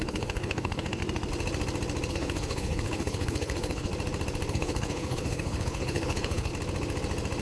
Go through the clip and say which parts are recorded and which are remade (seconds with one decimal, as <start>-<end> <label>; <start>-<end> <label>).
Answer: 0.0-1.0 remade; 1.0-2.1 recorded; 2.1-3.9 remade; 3.9-4.5 recorded; 4.5-6.5 remade; 6.5-7.4 recorded

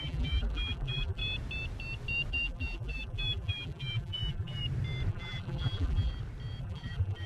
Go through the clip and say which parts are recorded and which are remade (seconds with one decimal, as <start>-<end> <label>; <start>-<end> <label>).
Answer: 0.0-1.2 remade; 1.2-2.3 recorded; 2.3-4.6 remade; 4.6-5.1 recorded; 5.1-6.1 remade; 6.1-6.6 recorded; 6.6-7.3 remade